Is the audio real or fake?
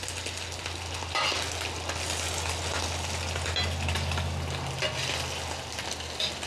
real